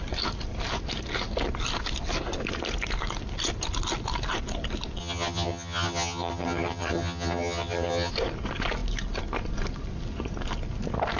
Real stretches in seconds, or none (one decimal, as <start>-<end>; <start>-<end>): 0.0-5.0; 8.1-11.2